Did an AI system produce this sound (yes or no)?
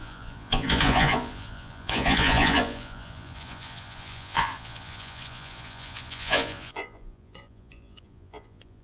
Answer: yes